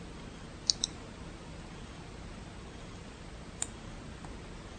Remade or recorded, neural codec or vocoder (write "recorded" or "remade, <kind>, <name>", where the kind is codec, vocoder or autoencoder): recorded